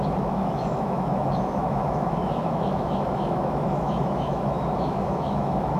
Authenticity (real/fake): fake